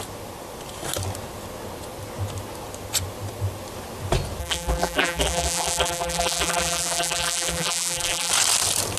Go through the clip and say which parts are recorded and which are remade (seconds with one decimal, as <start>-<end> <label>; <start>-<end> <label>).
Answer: 0.0-4.4 recorded; 4.4-8.3 remade; 8.3-9.0 recorded